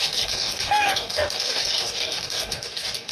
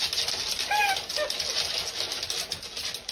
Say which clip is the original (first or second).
second